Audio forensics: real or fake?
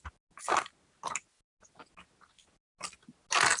real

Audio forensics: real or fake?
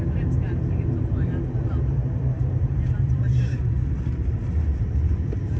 fake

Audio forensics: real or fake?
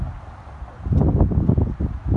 real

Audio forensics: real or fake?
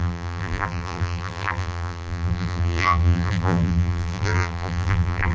fake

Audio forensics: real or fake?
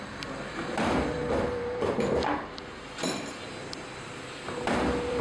fake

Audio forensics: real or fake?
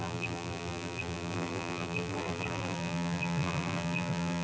fake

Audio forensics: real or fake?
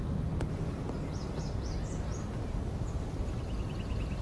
real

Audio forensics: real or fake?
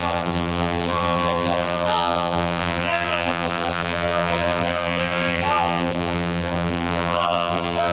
fake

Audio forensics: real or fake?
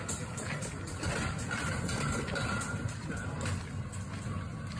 real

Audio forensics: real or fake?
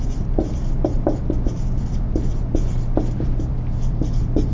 fake